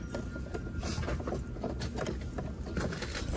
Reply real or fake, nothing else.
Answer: real